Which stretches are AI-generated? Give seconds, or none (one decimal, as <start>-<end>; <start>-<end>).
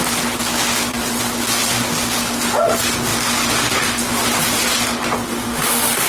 5.3-6.1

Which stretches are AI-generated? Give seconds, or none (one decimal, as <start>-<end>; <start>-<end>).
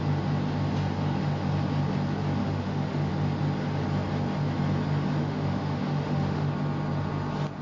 2.4-3.1; 5.2-6.5